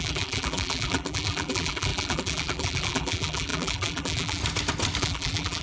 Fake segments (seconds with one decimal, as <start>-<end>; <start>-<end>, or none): 0.0-4.4; 5.0-5.6